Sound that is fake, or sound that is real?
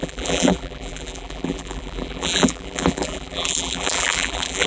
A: fake